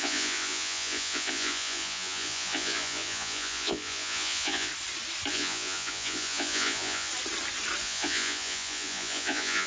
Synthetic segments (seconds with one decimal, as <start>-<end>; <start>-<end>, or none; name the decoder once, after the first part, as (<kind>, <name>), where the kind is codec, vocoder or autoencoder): 0.0-4.7 (vocoder, Vocos); 5.3-7.1; 7.8-9.7